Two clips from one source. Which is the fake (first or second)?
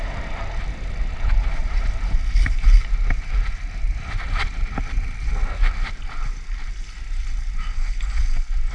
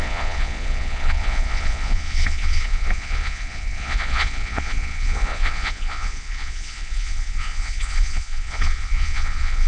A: second